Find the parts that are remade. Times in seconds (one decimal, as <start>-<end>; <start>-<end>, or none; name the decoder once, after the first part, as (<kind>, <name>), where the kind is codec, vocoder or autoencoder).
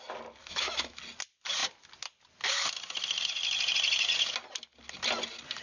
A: 0.4-1.0 (autoencoder, DAC-VAE)